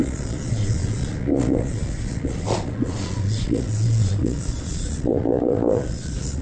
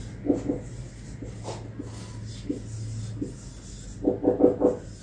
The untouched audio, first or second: second